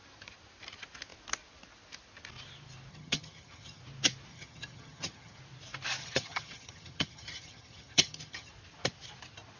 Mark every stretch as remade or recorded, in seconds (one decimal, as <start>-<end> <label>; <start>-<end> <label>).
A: 0.0-2.9 recorded; 2.9-3.8 remade; 3.8-4.3 recorded; 4.3-5.4 remade; 5.4-6.0 recorded; 6.0-8.5 remade; 8.5-9.6 recorded

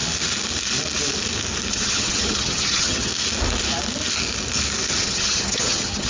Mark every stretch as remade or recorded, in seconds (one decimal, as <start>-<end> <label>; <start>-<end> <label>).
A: 0.0-1.7 recorded; 1.7-3.1 remade; 3.1-5.0 recorded; 5.0-6.1 remade

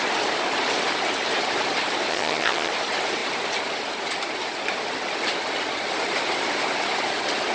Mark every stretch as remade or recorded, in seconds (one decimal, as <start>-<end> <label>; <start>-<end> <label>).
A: 0.0-2.1 recorded; 2.1-2.7 remade; 2.7-7.5 recorded

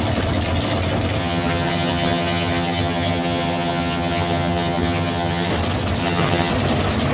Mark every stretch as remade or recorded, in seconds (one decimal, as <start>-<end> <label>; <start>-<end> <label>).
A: 0.0-1.2 recorded; 1.2-5.5 remade; 5.5-6.0 recorded; 6.0-6.5 remade; 6.5-7.1 recorded

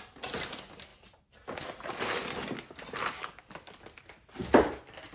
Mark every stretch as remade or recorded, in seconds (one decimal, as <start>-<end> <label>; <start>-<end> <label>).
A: 0.0-5.1 recorded

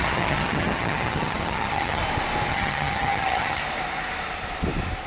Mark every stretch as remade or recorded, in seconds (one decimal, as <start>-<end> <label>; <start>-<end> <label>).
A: 0.0-2.0 remade; 2.0-2.5 recorded; 2.5-3.6 remade; 3.6-5.1 recorded